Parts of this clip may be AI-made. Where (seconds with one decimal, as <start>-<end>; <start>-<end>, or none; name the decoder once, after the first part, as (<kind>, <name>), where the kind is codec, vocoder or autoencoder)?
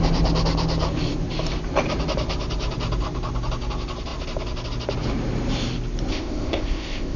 6.1-7.2 (codec, ZipCodec)